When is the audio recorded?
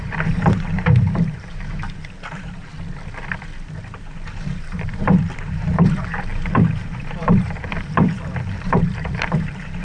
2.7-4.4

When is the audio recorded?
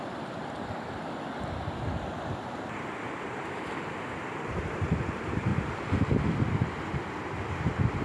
none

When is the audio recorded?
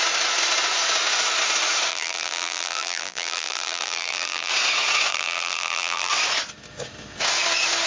0.0-1.9; 4.5-5.1; 6.1-7.9